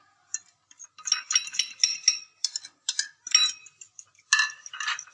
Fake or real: real